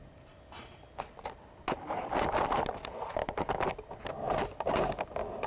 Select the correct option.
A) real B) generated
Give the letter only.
A